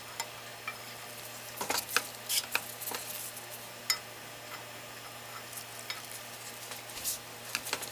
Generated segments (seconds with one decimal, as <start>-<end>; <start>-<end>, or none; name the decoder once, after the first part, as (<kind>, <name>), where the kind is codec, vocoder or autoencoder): none